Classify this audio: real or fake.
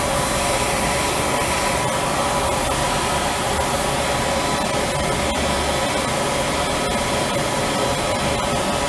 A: real